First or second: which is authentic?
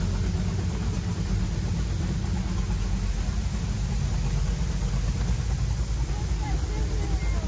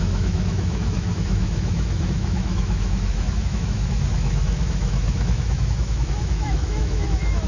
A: first